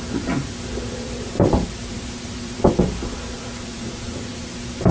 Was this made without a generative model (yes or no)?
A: no